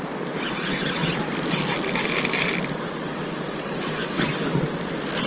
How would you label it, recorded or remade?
recorded